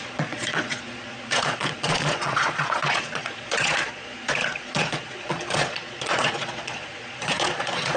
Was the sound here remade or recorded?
remade